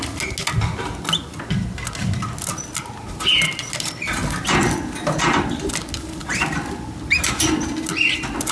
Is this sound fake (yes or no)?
no